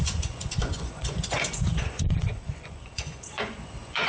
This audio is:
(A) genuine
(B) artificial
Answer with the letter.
B